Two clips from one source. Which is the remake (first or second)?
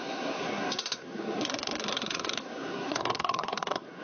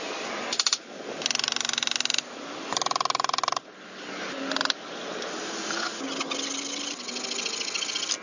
first